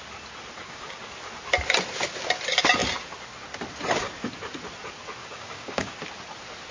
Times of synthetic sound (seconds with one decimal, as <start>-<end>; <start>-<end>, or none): 0.6-1.1; 5.2-5.9